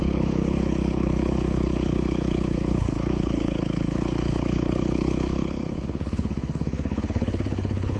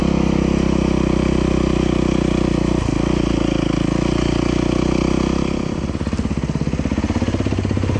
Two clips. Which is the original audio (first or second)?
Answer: second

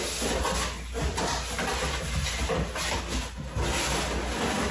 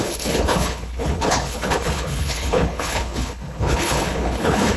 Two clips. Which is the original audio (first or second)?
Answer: first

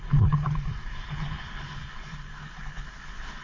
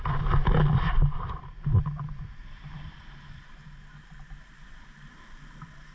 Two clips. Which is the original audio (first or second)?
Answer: second